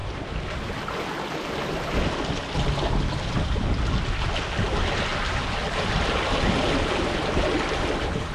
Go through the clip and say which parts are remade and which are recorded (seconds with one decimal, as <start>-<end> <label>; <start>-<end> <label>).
0.0-8.3 recorded